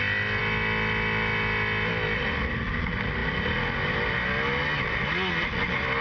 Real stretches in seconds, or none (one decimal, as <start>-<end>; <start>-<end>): 0.0-6.0